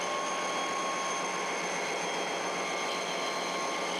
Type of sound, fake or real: real